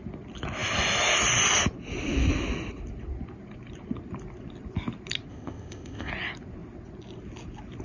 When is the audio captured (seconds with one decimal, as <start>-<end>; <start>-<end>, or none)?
0.0-5.3; 6.1-7.8